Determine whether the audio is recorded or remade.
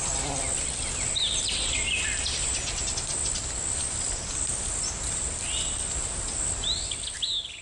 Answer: recorded